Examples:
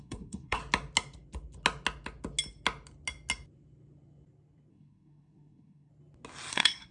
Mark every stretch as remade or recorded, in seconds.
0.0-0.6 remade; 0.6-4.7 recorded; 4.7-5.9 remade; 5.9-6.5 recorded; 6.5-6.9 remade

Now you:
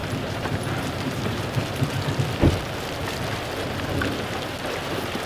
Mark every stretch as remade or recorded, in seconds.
0.0-1.9 remade; 1.9-5.3 recorded

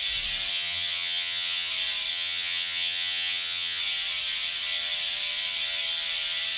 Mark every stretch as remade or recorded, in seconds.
0.0-0.5 recorded; 0.5-1.7 remade; 1.7-2.1 recorded; 2.1-3.8 remade; 3.8-6.6 recorded

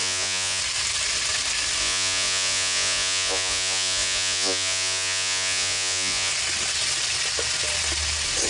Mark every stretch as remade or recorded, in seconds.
0.0-0.6 remade; 0.6-1.8 recorded; 1.8-6.3 remade; 6.3-8.5 recorded

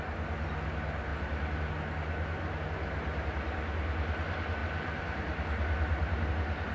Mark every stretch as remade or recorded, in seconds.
0.0-1.1 recorded; 1.1-1.7 remade; 1.7-4.6 recorded; 4.6-6.3 remade; 6.3-6.7 recorded

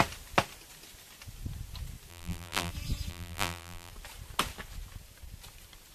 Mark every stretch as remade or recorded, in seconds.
0.0-2.1 recorded; 2.1-2.7 remade; 2.7-3.1 recorded; 3.1-3.9 remade; 3.9-5.9 recorded